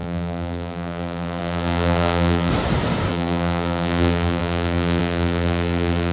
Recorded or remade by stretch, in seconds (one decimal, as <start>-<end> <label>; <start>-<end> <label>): 0.0-2.5 remade; 2.5-3.1 recorded; 3.1-6.1 remade